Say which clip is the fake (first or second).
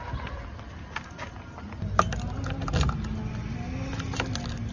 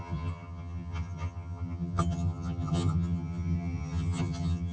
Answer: second